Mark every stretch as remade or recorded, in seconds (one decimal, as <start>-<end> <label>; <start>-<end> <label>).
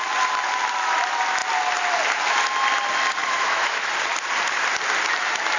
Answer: 0.0-3.2 recorded; 3.2-3.9 remade; 3.9-5.6 recorded